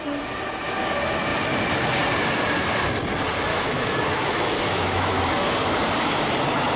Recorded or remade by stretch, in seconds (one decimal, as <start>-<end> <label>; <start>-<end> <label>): 0.0-3.5 recorded; 3.5-5.2 remade; 5.2-6.8 recorded